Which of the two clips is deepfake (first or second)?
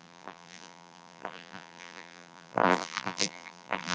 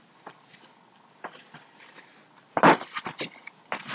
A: first